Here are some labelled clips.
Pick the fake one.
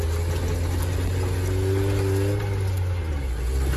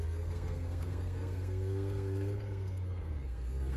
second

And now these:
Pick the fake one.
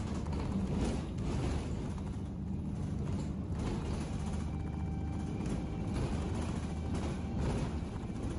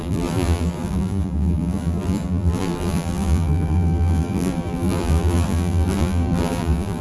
second